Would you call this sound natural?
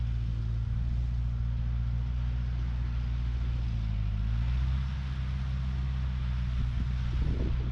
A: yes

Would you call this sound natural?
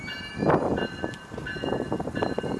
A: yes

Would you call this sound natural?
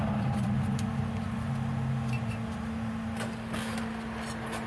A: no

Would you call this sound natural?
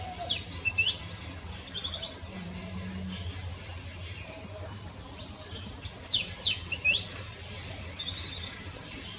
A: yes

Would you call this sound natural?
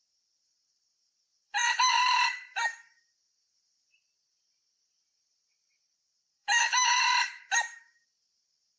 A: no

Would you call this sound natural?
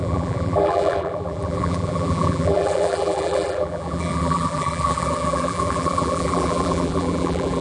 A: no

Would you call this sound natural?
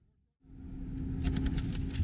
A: yes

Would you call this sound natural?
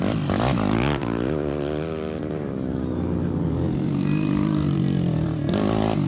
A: no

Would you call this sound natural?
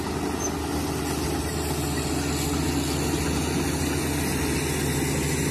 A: yes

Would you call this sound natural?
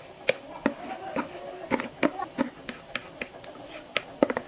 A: yes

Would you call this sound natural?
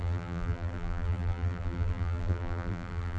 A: no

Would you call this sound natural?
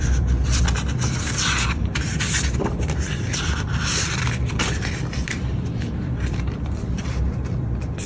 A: no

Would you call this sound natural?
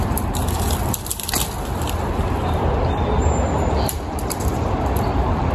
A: yes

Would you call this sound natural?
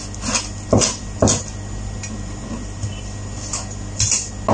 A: yes